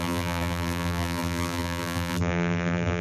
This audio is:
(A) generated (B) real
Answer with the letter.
A